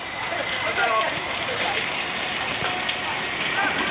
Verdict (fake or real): real